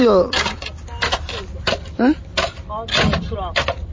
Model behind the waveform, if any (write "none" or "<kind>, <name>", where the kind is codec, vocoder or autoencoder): none